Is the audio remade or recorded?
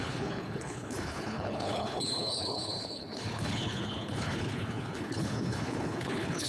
remade